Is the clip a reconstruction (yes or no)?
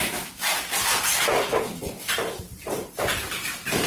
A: yes